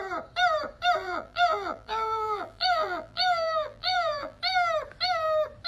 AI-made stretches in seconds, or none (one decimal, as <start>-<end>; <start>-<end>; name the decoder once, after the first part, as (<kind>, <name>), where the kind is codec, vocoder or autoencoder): 1.0-4.4 (vocoder, BigVGAN v2)